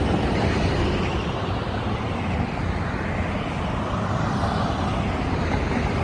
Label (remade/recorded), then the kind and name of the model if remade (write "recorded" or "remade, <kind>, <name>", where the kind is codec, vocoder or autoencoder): recorded